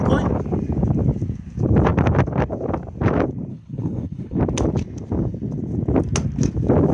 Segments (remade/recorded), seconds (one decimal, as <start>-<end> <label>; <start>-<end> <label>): 0.0-3.5 recorded; 3.5-4.4 remade; 4.4-6.9 recorded